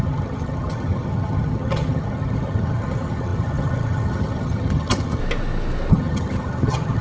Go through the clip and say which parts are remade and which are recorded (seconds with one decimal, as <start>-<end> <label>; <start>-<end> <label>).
0.0-5.2 remade; 5.2-5.9 recorded; 5.9-7.0 remade